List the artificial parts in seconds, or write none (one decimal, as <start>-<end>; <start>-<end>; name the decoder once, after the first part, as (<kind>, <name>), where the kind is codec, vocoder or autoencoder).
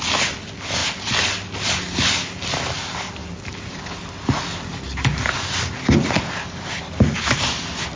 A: none